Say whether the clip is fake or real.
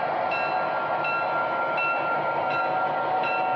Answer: real